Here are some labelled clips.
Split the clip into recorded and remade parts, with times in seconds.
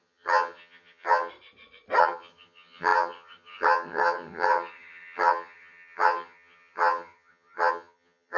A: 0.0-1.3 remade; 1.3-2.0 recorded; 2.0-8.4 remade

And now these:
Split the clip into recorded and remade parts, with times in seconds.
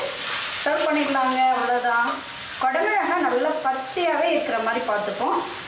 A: 0.0-5.7 recorded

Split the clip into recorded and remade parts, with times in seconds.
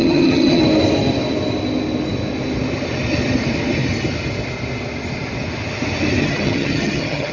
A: 0.0-0.6 remade; 0.6-6.2 recorded; 6.2-7.3 remade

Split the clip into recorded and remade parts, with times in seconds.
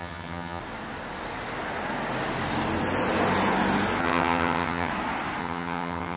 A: 0.0-0.6 remade; 0.6-4.0 recorded; 4.0-4.9 remade; 4.9-5.4 recorded; 5.4-6.2 remade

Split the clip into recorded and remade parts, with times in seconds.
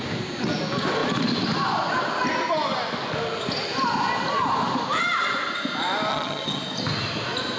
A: 0.0-6.1 recorded; 6.1-6.6 remade; 6.6-7.6 recorded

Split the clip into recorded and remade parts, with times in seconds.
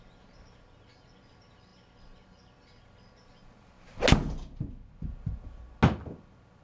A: 0.0-6.6 recorded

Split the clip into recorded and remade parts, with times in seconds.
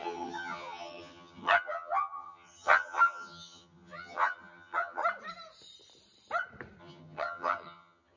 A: 0.0-5.0 remade; 5.0-6.8 recorded; 6.8-8.2 remade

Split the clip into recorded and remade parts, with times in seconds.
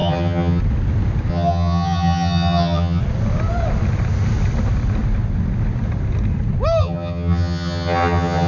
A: 0.0-0.6 remade; 0.6-1.3 recorded; 1.3-3.0 remade; 3.0-6.8 recorded; 6.8-8.5 remade